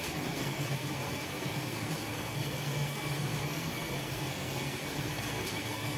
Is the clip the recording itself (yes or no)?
no